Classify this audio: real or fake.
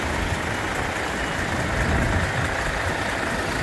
real